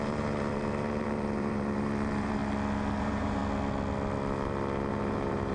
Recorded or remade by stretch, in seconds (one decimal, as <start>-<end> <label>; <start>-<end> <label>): 0.0-2.4 remade; 2.4-3.0 recorded; 3.0-3.4 remade; 3.4-4.9 recorded; 4.9-5.5 remade